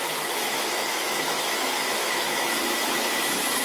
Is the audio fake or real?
fake